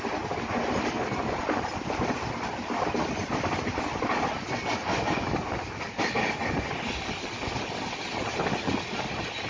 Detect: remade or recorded recorded